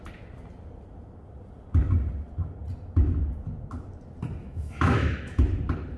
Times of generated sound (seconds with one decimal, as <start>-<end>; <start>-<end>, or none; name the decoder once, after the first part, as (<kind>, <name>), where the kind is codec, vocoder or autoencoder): 4.4-5.4 (autoencoder, DAC-VAE)